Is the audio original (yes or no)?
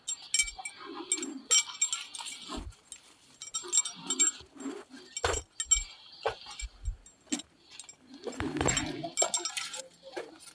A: yes